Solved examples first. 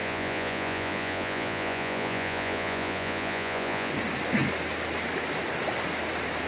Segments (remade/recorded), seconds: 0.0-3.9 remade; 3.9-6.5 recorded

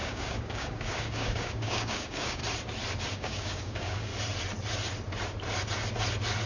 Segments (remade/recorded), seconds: 0.0-2.4 remade; 2.4-3.1 recorded; 3.1-4.1 remade; 4.1-6.5 recorded

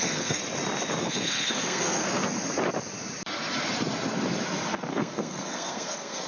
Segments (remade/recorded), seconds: 0.0-0.4 remade; 0.4-1.0 recorded; 1.0-2.2 remade; 2.2-4.9 recorded; 4.9-6.3 remade

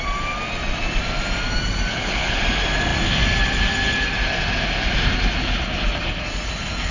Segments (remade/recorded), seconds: 0.0-1.9 recorded; 1.9-2.4 remade; 2.4-6.9 recorded

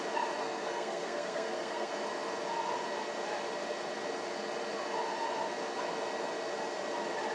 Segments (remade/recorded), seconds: 0.0-0.4 recorded; 0.4-1.9 remade; 1.9-7.3 recorded

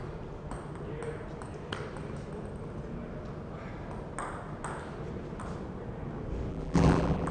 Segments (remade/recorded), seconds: 0.0-6.5 recorded; 6.5-7.3 remade